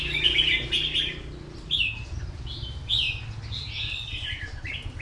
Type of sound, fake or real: real